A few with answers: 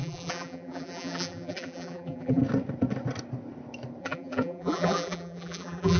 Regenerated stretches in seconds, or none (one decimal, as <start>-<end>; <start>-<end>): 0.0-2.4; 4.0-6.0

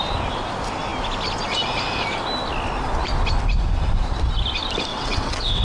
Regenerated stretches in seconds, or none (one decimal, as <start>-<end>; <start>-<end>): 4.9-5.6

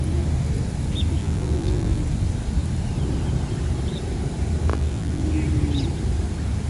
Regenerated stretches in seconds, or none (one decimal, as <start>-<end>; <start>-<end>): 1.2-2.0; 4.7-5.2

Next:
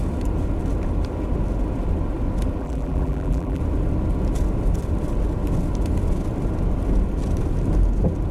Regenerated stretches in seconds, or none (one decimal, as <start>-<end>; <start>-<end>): 2.6-3.6

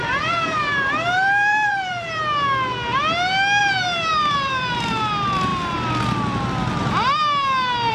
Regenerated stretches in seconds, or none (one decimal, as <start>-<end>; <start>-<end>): 0.0-2.2; 3.6-5.5